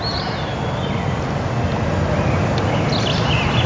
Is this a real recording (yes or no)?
yes